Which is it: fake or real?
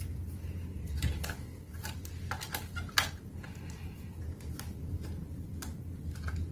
real